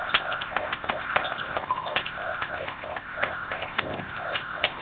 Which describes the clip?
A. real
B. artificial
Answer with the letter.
B